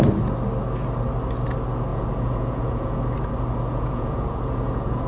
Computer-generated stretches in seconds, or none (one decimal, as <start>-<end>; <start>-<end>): 1.9-3.0; 3.7-5.1